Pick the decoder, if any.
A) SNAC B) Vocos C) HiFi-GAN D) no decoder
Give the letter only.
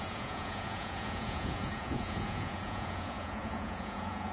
B